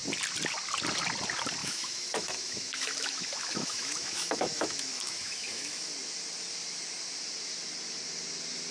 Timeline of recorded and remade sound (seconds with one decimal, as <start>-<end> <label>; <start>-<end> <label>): 0.0-1.6 recorded; 1.6-5.9 remade; 5.9-8.7 recorded